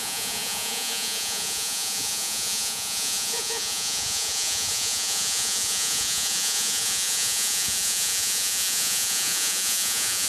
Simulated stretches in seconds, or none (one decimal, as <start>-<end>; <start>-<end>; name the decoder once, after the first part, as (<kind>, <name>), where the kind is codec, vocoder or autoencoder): 0.0-10.3 (vocoder, Vocos)